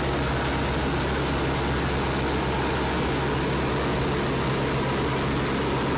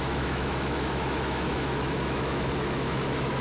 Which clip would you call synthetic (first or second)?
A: second